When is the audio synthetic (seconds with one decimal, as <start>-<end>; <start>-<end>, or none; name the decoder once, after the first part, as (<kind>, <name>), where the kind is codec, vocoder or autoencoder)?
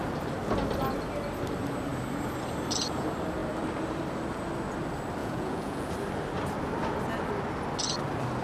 5.2-5.9 (vocoder, Vocos)